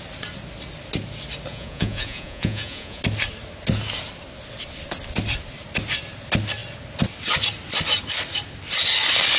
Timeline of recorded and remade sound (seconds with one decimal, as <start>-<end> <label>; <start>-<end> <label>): 0.0-1.5 recorded; 1.5-3.0 remade; 3.0-9.4 recorded